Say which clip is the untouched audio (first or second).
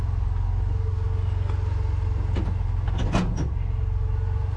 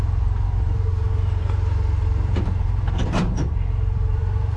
first